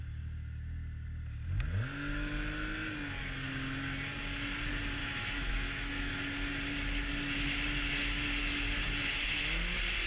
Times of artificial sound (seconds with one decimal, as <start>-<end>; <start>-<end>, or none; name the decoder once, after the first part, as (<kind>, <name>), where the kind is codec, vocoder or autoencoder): 5.0-6.1 (autoencoder, DAC-VAE)